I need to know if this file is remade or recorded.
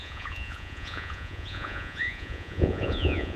remade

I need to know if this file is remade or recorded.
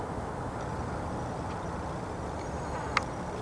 recorded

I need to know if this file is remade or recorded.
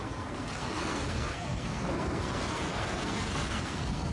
remade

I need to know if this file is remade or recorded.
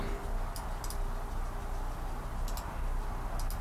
recorded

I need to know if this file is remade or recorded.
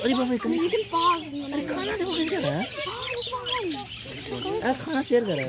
recorded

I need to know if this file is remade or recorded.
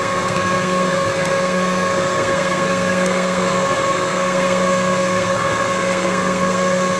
remade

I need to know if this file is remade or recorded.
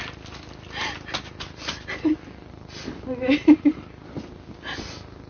recorded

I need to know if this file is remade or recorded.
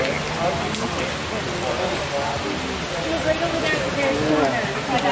recorded